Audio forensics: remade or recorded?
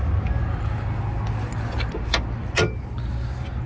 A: recorded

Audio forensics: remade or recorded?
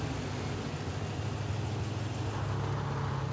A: recorded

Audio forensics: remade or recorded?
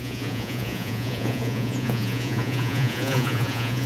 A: remade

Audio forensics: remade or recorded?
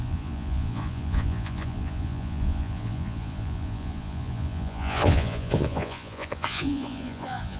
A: remade